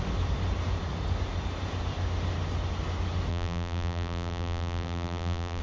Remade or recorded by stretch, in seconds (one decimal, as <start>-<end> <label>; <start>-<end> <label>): 0.0-3.3 recorded; 3.3-5.6 remade